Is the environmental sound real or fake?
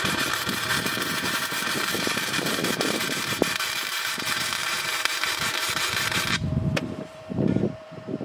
fake